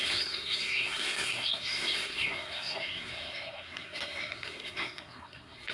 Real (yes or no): no